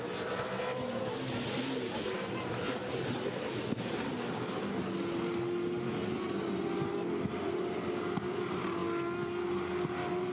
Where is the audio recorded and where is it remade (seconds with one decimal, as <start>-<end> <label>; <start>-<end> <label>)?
0.0-10.3 recorded